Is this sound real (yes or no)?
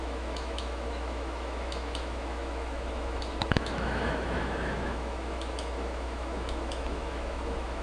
no